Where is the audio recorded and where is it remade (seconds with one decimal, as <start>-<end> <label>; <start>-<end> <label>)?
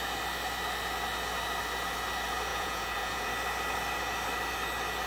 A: 0.0-2.5 recorded; 2.5-3.3 remade; 3.3-5.1 recorded